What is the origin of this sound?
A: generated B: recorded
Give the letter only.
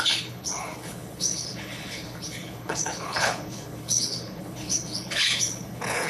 A